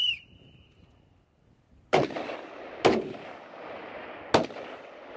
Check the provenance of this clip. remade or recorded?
recorded